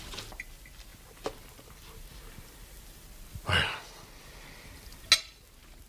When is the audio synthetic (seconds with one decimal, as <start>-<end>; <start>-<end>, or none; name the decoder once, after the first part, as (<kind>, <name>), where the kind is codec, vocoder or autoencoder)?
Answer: none